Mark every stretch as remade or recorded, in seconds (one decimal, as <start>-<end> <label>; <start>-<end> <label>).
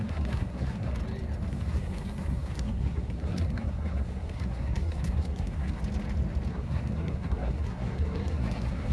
0.0-1.0 remade; 1.0-1.5 recorded; 1.5-5.8 remade; 5.8-6.5 recorded; 6.5-8.9 remade